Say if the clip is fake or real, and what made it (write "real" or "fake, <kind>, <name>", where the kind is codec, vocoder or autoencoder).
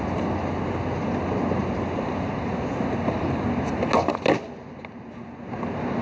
real